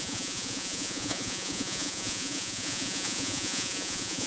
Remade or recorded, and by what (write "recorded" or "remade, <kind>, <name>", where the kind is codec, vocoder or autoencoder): remade, vocoder, Vocos